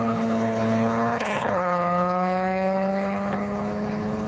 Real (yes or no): no